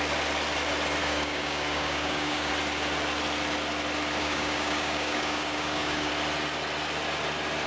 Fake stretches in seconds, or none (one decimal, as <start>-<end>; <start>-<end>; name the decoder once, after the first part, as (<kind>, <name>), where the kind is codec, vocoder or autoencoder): 1.0-2.5 (codec, DAC); 4.2-6.1